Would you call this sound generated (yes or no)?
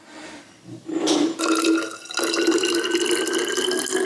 no